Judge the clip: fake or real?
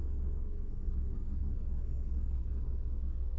fake